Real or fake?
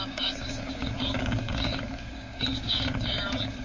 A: fake